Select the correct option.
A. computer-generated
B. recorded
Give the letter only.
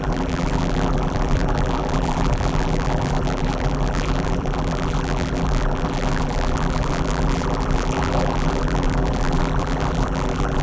A